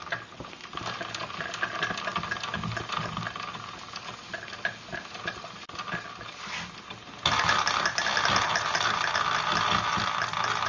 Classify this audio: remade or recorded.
recorded